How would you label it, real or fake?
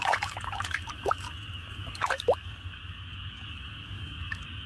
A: fake